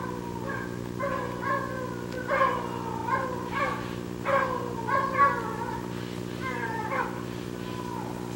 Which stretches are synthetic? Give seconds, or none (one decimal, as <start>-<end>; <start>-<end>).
none